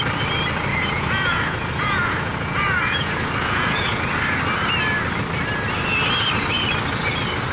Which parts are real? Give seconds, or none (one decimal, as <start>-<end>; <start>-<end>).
0.0-0.7; 4.0-7.5